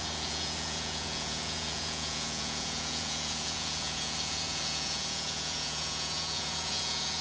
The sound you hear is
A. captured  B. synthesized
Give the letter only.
B